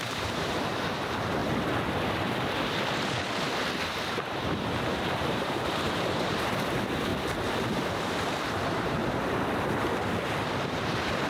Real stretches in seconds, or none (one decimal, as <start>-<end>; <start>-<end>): 1.4-5.1; 7.1-8.0; 9.0-10.5